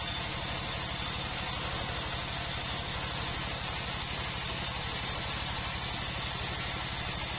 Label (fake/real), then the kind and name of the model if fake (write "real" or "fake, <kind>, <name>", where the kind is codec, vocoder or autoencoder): real